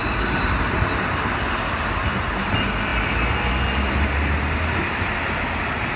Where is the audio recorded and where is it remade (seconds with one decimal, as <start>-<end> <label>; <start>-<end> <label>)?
0.0-6.0 recorded

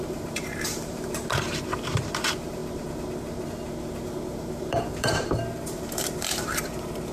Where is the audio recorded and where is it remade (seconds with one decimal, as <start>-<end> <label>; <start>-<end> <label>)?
0.0-2.6 remade; 2.6-4.3 recorded; 4.3-7.1 remade

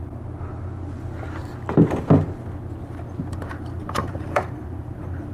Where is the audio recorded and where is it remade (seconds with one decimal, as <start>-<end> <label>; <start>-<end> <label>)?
0.0-3.2 recorded; 3.2-5.3 remade

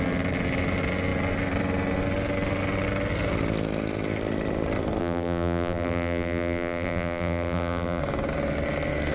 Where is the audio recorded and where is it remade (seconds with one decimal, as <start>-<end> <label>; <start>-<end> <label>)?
0.0-5.0 recorded; 5.0-8.0 remade; 8.0-9.1 recorded

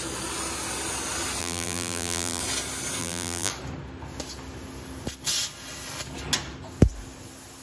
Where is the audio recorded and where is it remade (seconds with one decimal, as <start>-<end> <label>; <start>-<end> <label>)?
0.0-1.4 recorded; 1.4-2.4 remade; 2.4-3.0 recorded; 3.0-3.5 remade; 3.5-7.6 recorded

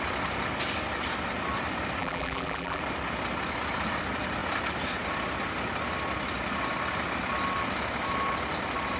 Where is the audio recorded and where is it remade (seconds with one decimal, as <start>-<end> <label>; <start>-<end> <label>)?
0.0-2.0 recorded; 2.0-2.8 remade; 2.8-9.0 recorded

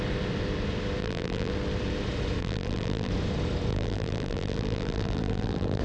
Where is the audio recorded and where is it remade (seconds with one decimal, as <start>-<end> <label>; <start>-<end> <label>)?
0.0-1.0 recorded; 1.0-1.5 remade; 1.5-2.4 recorded; 2.4-3.1 remade; 3.1-3.7 recorded; 3.7-5.8 remade

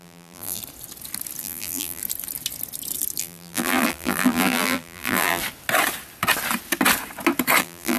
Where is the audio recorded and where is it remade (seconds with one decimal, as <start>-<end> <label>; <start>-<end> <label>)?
0.0-0.6 remade; 0.6-1.4 recorded; 1.4-2.0 remade; 2.0-3.2 recorded; 3.2-5.4 remade; 5.4-7.6 recorded; 7.6-8.0 remade